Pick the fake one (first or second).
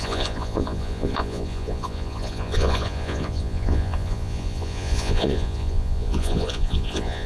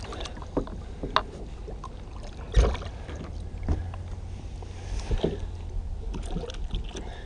first